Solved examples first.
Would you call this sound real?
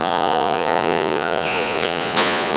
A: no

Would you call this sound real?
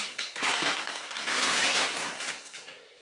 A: no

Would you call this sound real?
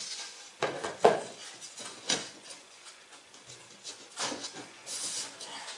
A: no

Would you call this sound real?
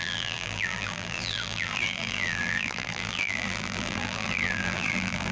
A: no